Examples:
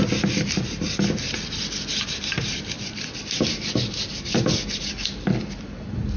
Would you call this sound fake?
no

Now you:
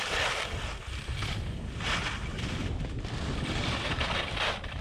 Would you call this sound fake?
no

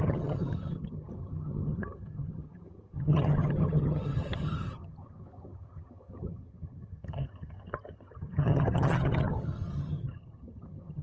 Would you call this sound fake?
yes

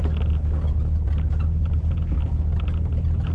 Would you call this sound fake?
no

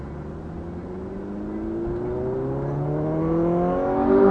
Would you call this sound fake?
no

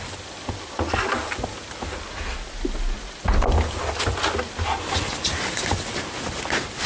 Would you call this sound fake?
no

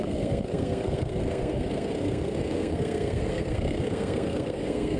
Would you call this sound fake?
yes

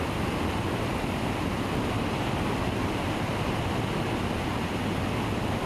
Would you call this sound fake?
no